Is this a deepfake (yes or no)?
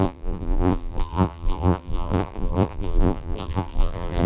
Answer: yes